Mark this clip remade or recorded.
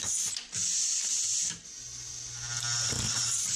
recorded